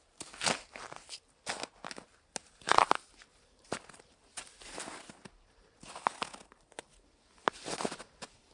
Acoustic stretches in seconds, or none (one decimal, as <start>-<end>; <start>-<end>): 0.0-2.4; 2.9-3.3; 4.2-8.5